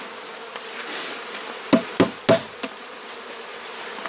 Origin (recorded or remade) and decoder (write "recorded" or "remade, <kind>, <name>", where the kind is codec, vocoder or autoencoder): recorded